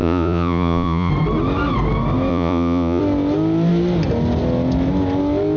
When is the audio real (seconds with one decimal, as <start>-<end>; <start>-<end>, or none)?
1.1-2.3; 3.0-5.6